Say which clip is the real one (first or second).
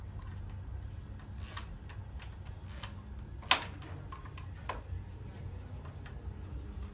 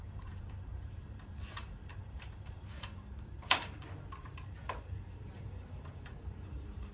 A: first